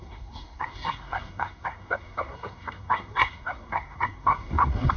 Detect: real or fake fake